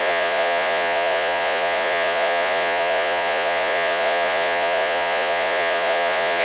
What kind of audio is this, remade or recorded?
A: remade